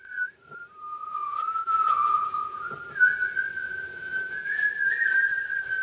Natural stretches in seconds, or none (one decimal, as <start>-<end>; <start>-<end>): 0.0-1.0; 2.7-3.6; 4.7-5.8